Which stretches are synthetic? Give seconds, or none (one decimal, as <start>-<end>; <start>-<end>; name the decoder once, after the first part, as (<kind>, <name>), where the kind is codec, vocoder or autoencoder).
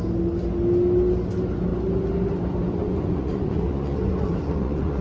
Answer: 2.8-5.0 (vocoder, Vocos)